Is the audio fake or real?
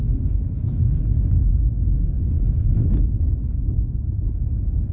fake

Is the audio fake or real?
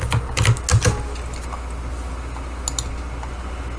real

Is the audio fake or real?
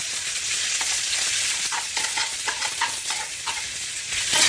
fake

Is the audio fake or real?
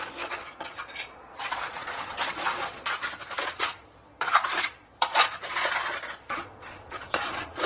fake